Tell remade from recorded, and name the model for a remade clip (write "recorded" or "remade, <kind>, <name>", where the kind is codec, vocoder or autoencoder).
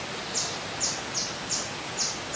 recorded